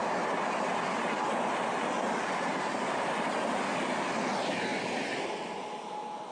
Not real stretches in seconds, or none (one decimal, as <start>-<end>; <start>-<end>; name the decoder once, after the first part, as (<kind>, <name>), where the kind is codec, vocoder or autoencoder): none